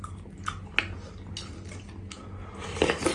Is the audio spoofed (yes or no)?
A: no